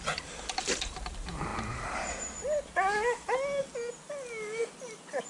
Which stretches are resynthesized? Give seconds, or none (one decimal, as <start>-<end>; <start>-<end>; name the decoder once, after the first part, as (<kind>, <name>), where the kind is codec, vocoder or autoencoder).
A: none